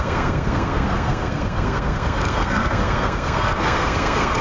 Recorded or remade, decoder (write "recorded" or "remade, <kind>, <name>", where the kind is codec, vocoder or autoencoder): remade, codec, SNAC